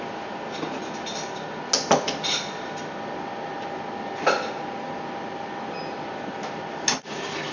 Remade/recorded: recorded